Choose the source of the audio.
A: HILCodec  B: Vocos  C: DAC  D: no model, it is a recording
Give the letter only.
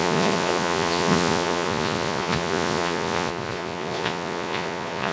B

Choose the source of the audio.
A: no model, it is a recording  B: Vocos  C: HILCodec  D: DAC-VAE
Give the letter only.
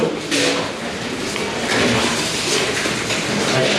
A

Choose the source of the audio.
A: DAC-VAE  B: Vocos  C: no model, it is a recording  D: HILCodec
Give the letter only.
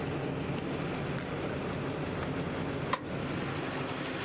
C